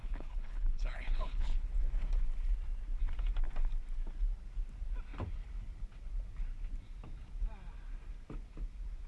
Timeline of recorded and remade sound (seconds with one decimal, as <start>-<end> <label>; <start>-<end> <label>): 0.0-1.7 remade; 1.7-9.1 recorded